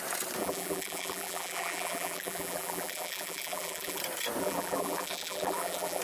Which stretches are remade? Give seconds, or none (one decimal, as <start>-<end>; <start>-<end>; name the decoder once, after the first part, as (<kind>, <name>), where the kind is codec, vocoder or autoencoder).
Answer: 0.4-4.0 (vocoder, BigVGAN v2); 4.4-6.0